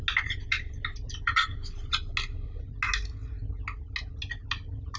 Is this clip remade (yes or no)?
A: no